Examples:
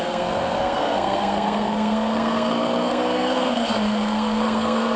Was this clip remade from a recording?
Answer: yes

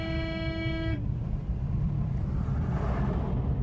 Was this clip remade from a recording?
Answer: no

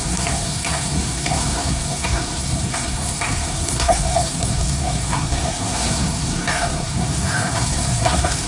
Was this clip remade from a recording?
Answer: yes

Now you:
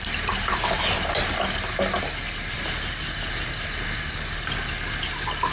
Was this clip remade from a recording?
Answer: no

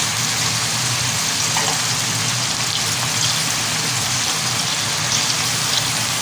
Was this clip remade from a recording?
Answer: no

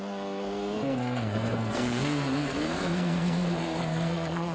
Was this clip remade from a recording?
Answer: yes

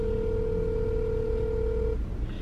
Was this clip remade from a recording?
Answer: no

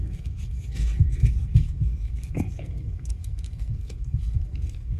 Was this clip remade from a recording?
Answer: yes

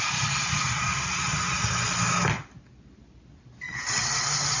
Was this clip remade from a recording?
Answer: no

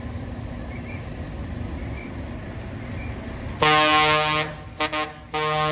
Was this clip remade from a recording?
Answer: no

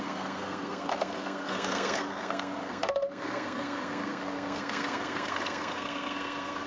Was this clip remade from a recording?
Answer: yes